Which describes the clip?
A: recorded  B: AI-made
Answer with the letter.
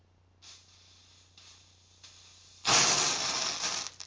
A